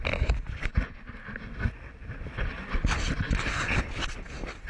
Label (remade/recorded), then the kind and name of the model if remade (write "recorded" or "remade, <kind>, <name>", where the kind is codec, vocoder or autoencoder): recorded